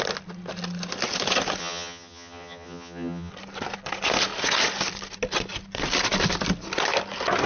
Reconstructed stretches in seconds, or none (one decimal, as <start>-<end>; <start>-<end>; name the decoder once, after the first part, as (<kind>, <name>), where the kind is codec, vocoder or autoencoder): 1.6-3.3 (vocoder, HiFi-GAN)